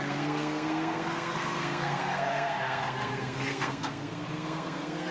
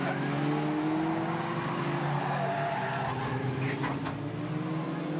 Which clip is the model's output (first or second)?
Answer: first